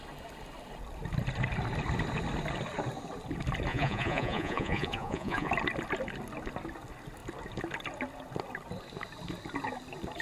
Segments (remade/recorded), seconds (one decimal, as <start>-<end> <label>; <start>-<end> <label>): 0.0-3.7 recorded; 3.7-5.5 remade; 5.5-10.2 recorded